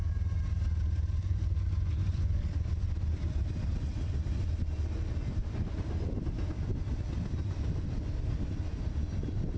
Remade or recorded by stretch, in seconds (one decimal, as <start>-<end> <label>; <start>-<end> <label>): 0.0-1.2 recorded; 1.2-2.4 remade; 2.4-9.6 recorded